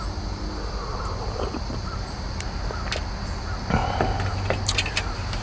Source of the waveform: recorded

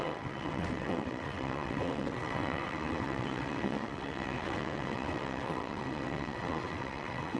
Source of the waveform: remade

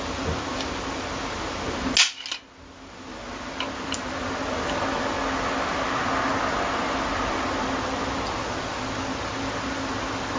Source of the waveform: recorded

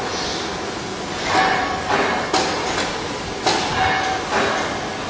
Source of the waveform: recorded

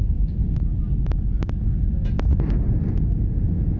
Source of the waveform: recorded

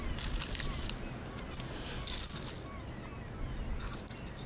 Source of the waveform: recorded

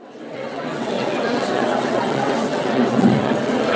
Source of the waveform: remade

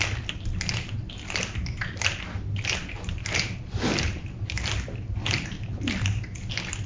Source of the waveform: recorded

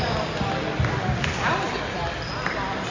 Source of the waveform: recorded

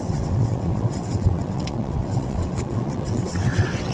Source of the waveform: remade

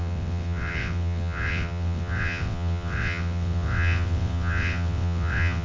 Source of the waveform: remade